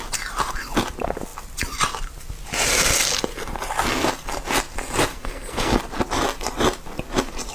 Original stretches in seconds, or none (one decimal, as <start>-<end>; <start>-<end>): 0.0-5.1; 5.8-7.5